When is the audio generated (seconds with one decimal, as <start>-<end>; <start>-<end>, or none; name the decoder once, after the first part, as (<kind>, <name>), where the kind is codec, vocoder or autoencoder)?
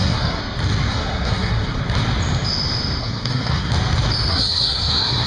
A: 0.0-0.4 (codec, SNAC); 0.9-1.8; 3.0-3.7; 4.3-5.3